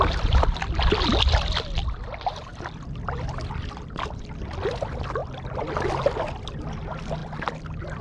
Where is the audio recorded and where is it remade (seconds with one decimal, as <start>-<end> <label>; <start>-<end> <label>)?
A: 0.0-2.5 recorded; 2.5-4.2 remade; 4.2-8.0 recorded